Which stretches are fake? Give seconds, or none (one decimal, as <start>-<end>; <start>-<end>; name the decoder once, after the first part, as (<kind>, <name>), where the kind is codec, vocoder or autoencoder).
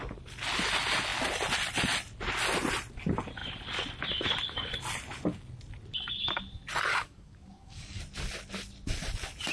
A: 6.9-8.0 (codec, DAC)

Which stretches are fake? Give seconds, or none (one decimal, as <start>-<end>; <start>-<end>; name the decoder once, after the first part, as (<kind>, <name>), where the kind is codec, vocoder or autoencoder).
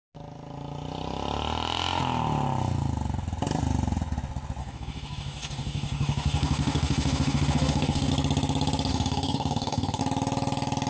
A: 4.6-8.1 (codec, DAC); 8.9-10.0